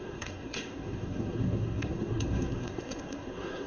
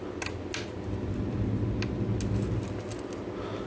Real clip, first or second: second